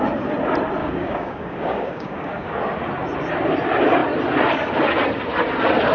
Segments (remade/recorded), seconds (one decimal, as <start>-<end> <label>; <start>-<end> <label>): 0.0-0.8 recorded; 0.8-2.6 remade; 2.6-5.9 recorded